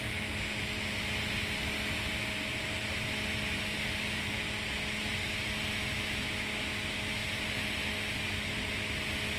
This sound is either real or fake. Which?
real